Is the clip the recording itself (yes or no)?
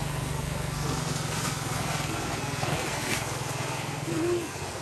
no